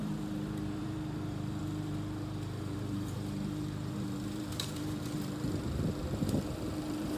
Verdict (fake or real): fake